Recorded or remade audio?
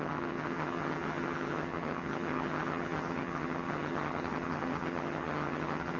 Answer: remade